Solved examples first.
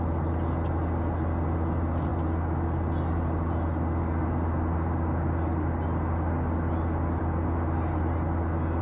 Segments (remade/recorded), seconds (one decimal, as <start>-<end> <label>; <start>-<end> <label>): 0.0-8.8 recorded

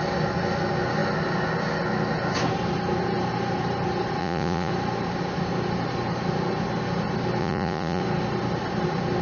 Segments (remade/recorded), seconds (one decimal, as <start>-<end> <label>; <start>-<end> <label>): 0.0-4.2 recorded; 4.2-4.7 remade; 4.7-7.4 recorded; 7.4-8.0 remade; 8.0-9.2 recorded

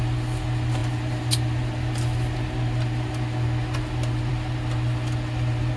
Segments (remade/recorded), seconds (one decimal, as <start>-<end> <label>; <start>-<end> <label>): 0.0-5.8 recorded